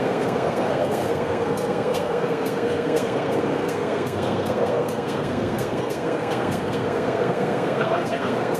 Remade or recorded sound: remade